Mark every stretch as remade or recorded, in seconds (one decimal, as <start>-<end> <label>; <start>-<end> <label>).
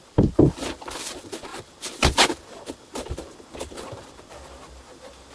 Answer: 0.0-5.3 recorded